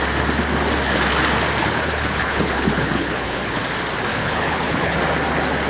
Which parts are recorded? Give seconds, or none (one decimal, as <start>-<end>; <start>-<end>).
0.0-1.6; 3.6-4.1; 5.0-5.7